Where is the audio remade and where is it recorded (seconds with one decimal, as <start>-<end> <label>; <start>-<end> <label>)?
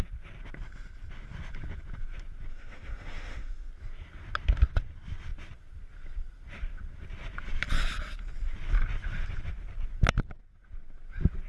0.0-2.5 recorded; 2.5-3.7 remade; 3.7-11.5 recorded